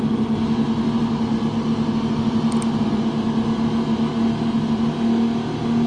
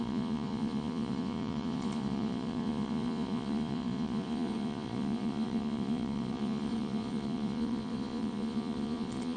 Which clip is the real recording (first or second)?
first